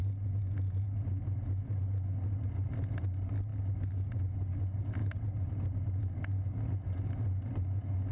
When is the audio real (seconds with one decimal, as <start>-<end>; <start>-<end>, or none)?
0.0-5.0; 5.5-8.1